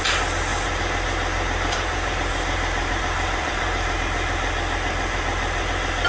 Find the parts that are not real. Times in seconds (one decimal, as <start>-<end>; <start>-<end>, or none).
0.5-4.0